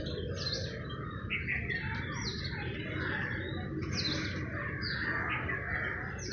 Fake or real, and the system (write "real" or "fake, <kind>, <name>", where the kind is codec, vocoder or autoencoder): real